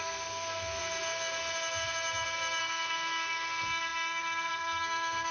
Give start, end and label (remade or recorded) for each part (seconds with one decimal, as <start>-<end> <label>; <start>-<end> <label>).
0.0-0.8 remade; 0.8-2.6 recorded; 2.6-5.3 remade